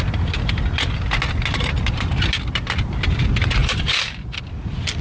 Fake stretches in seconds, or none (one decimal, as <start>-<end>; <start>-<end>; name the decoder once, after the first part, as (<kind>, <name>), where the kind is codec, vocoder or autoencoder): 3.6-4.4 (vocoder, BigVGAN v2)